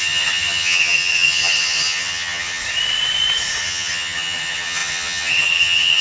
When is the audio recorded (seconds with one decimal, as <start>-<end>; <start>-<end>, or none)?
2.6-3.6